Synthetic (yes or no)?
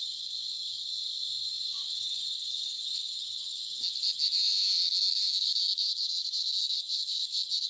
yes